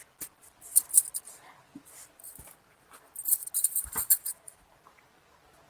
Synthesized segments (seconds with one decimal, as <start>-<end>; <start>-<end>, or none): 1.7-5.1